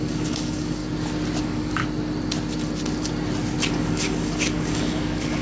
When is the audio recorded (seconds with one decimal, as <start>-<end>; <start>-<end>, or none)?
0.8-1.4; 1.8-3.7